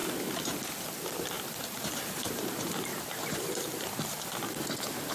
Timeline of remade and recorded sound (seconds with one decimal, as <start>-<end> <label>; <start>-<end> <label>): 0.0-1.2 recorded; 1.2-4.4 remade; 4.4-5.1 recorded